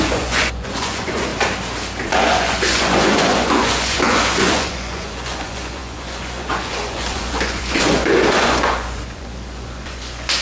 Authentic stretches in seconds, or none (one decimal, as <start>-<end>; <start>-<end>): 1.3-2.1